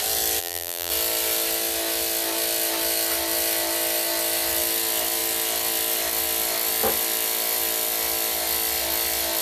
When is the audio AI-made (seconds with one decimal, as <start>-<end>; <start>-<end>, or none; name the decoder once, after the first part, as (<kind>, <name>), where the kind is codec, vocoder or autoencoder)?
0.4-0.9 (vocoder, BigVGAN v2)